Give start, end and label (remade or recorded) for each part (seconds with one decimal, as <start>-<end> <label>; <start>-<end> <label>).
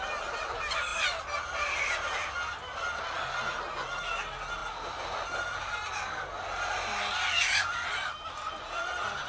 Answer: 0.0-9.3 recorded